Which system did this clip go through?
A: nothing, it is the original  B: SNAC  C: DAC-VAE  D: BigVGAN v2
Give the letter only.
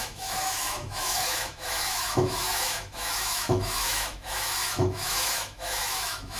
C